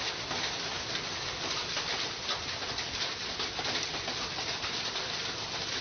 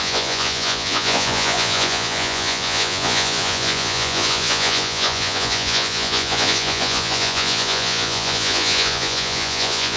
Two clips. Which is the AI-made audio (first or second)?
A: second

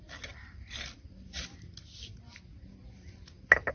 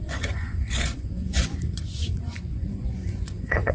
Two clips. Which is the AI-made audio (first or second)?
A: second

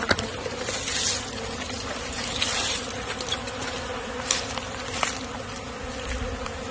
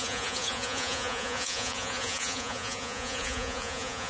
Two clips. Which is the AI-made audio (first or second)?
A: second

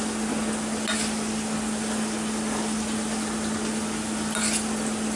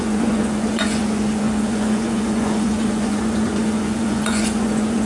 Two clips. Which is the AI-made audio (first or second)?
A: second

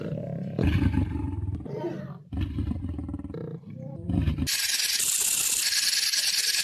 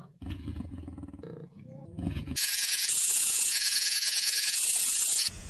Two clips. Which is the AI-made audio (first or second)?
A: second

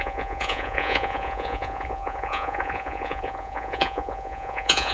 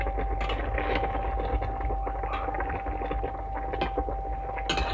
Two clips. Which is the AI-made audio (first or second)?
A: first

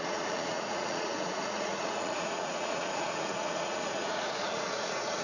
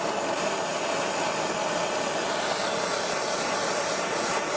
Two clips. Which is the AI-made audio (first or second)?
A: first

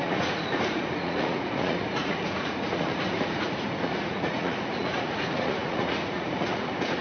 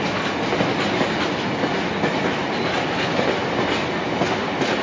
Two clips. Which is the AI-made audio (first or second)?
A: first